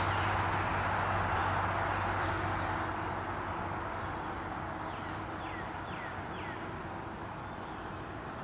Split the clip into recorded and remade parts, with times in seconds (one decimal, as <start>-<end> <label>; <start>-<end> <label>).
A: 0.0-8.4 recorded